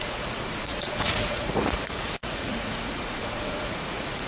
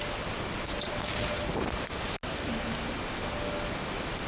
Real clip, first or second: second